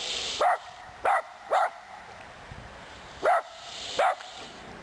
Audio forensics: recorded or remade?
remade